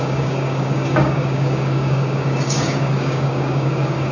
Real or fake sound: fake